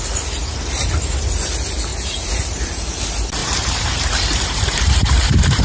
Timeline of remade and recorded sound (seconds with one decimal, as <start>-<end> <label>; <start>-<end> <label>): 0.0-1.9 recorded; 1.9-2.9 remade; 2.9-3.4 recorded; 3.4-5.1 remade; 5.1-5.6 recorded